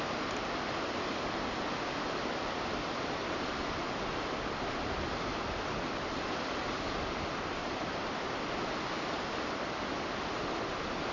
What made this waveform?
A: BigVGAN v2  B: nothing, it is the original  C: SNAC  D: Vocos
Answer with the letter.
B